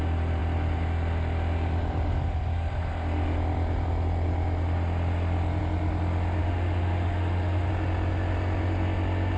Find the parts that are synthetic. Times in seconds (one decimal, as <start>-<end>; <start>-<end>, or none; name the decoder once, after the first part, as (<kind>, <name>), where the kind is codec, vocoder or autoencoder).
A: 6.4-7.7 (autoencoder, DAC-VAE)